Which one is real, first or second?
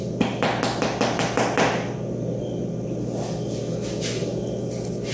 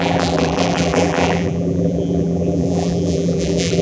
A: first